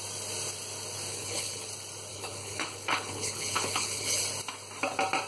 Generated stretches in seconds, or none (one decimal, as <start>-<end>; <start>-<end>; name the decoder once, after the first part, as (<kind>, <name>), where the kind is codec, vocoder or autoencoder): 1.1-1.7 (codec, HILCodec); 2.1-4.2